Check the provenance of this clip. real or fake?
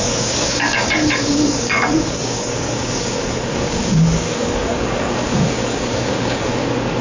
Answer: fake